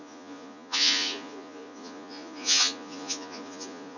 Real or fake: fake